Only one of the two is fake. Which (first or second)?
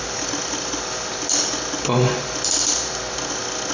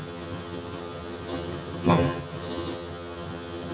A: second